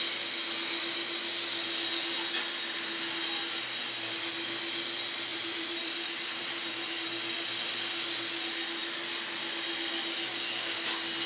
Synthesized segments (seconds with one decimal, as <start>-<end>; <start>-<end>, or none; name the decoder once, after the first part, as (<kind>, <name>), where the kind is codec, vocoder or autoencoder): 5.3-7.1 (vocoder, BigVGAN v2)